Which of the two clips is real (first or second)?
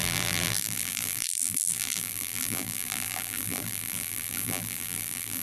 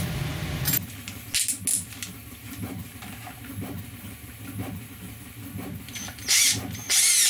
second